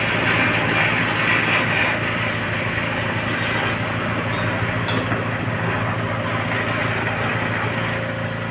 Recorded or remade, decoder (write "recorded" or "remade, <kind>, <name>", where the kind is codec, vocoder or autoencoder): recorded